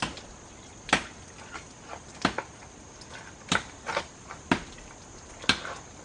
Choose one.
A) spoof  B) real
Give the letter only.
B